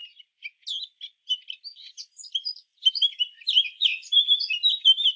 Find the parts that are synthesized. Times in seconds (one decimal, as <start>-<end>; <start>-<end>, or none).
2.7-5.2

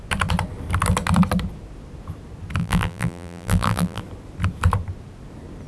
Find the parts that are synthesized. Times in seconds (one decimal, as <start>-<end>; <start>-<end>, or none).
2.6-4.0

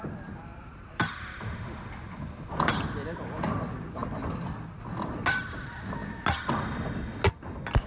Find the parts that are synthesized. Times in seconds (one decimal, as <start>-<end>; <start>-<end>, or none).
0.5-3.9

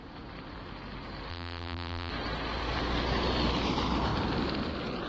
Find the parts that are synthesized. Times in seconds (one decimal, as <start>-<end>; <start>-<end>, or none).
1.3-2.1